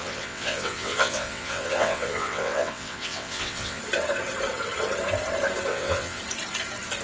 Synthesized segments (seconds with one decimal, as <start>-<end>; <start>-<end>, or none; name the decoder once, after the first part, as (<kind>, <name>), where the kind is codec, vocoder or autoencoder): 0.0-3.8 (vocoder, WaveNeXt); 5.7-6.2